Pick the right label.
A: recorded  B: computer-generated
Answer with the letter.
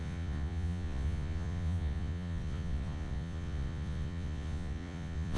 B